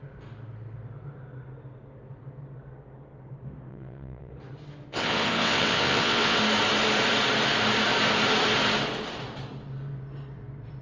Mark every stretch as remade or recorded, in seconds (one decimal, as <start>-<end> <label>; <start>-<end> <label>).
0.0-3.7 recorded; 3.7-4.3 remade; 4.3-4.9 recorded; 4.9-6.4 remade; 6.4-10.8 recorded